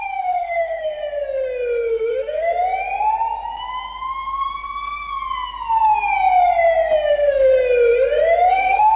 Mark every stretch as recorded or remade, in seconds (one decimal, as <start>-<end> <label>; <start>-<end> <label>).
0.0-1.0 remade; 1.0-1.9 recorded; 1.9-2.5 remade; 2.5-7.1 recorded; 7.1-7.5 remade; 7.5-8.5 recorded; 8.5-9.0 remade